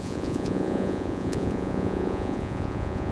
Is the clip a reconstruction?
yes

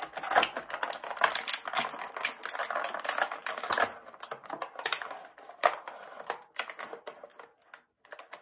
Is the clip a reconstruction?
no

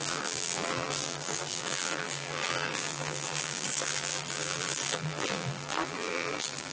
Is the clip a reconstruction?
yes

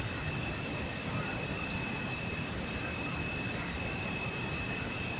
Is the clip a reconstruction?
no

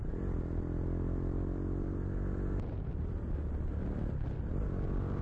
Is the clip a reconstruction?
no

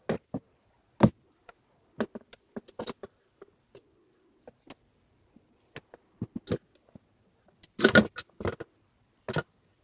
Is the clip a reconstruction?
no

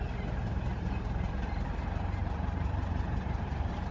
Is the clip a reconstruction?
yes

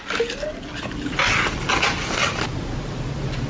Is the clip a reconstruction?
no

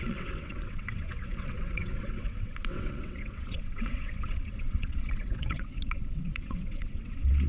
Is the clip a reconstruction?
yes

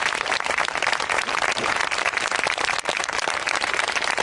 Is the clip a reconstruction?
yes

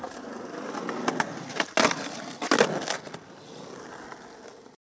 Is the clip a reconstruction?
no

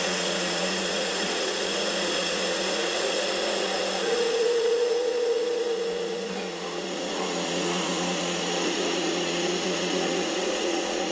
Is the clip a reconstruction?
yes